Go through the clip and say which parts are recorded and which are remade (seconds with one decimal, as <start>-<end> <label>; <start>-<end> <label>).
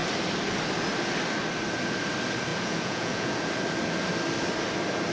0.0-2.5 recorded; 2.5-3.5 remade; 3.5-5.1 recorded